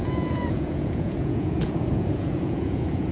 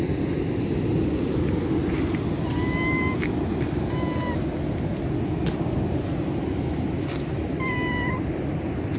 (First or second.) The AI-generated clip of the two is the first